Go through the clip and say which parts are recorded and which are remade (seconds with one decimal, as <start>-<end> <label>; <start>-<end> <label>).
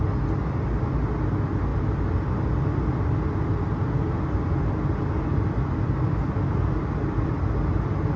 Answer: 0.0-8.2 recorded